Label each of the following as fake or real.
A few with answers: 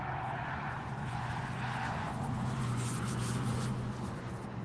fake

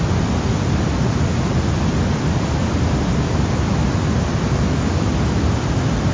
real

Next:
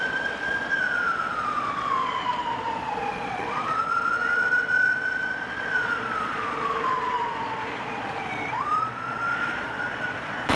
fake